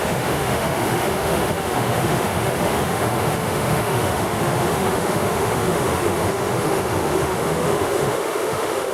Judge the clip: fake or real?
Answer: fake